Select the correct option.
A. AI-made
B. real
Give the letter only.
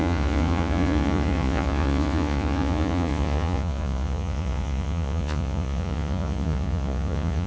A